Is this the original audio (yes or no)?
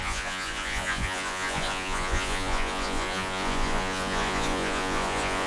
no